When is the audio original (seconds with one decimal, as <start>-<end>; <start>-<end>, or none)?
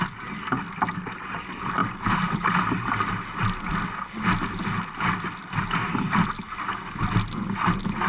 0.0-8.1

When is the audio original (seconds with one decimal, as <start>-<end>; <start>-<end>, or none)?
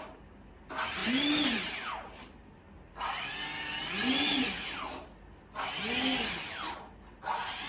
0.0-7.7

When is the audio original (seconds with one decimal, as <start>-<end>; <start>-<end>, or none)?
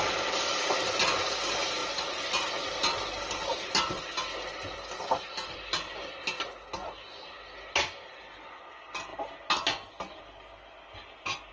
0.0-11.5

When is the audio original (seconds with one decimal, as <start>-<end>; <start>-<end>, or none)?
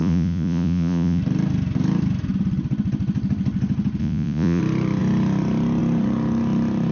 1.2-4.0; 4.6-6.9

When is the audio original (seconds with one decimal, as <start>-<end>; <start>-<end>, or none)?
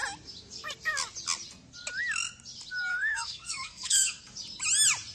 0.0-2.9; 4.2-5.1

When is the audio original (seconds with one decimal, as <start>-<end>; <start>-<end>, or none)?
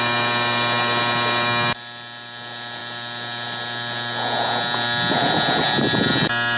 0.0-6.6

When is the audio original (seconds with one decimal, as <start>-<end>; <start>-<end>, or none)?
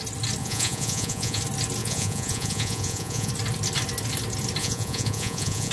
0.0-0.4; 1.4-1.8; 3.3-4.6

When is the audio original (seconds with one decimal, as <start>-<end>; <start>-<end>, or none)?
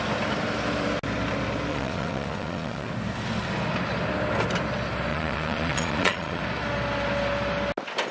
0.0-1.7; 2.9-5.1; 6.4-8.1